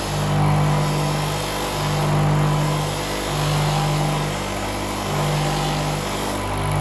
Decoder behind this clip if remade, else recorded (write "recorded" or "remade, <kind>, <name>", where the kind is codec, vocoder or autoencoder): recorded